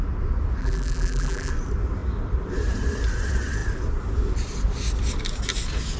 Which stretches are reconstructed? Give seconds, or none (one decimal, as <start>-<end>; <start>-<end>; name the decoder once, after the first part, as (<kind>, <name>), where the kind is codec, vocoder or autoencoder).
0.6-1.5 (vocoder, BigVGAN v2)